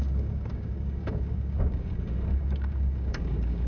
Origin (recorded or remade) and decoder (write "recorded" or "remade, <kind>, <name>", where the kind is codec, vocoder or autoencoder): remade, codec, DAC